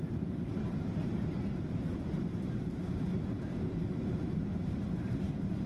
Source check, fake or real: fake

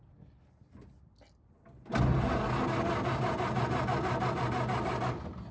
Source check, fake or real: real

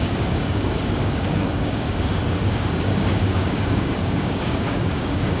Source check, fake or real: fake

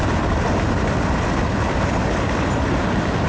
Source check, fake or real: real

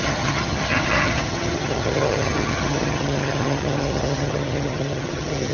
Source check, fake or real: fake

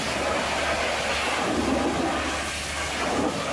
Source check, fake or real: real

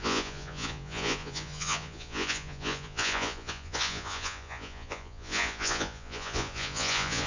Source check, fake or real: fake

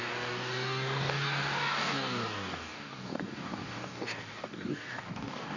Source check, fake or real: fake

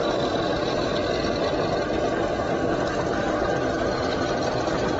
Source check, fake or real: real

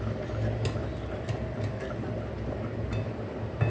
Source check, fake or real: real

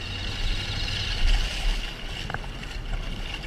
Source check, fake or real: real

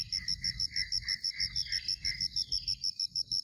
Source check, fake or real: real